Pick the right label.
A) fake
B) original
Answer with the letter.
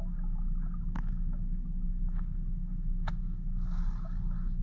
B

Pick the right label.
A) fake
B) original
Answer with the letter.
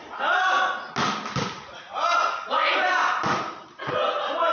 B